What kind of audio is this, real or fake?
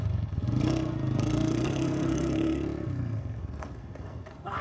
fake